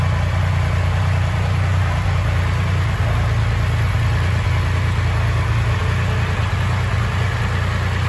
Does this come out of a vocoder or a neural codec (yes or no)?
no